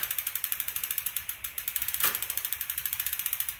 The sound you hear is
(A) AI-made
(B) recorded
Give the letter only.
A